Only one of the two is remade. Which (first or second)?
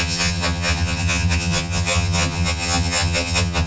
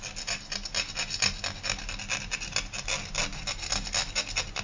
first